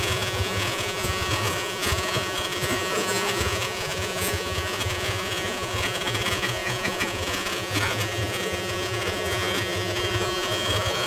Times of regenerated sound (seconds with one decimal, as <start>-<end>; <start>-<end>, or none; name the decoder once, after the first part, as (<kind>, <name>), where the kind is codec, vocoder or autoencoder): 0.0-11.1 (vocoder, Vocos)